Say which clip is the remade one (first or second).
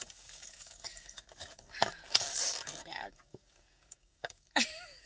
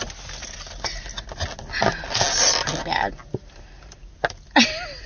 first